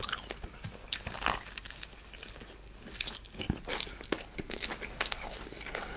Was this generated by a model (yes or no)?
no